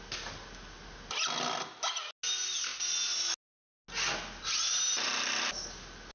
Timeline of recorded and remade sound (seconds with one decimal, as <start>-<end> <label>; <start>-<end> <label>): 0.0-6.1 recorded